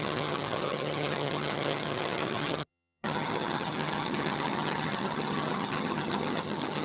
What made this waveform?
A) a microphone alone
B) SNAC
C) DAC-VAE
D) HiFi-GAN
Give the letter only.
D